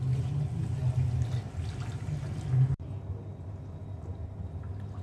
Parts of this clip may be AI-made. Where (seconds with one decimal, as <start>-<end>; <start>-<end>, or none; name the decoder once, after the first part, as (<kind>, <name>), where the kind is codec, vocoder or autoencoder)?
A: none